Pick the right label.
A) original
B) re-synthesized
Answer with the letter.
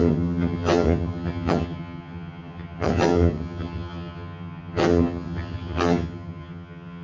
B